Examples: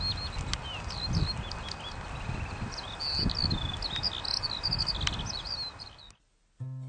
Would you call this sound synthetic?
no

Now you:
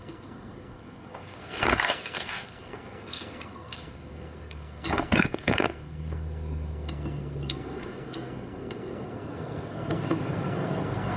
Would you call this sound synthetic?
yes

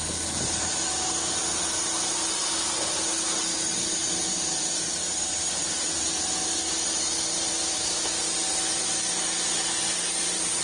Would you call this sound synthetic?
no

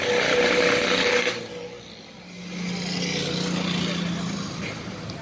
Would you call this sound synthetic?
no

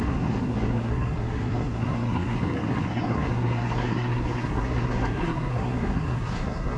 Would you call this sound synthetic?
yes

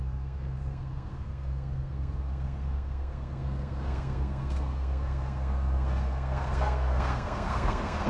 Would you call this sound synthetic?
yes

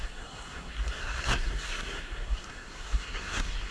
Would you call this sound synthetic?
yes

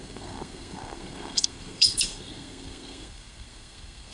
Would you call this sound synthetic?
yes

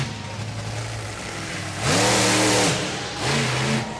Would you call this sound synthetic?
no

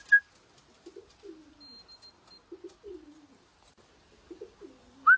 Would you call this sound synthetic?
no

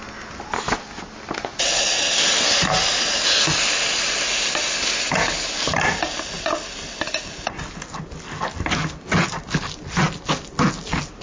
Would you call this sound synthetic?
no